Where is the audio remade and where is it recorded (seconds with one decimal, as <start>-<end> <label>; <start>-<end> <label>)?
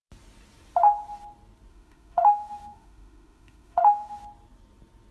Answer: 0.0-1.7 recorded; 1.7-4.2 remade; 4.2-5.1 recorded